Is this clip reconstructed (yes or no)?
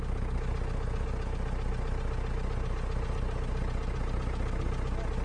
no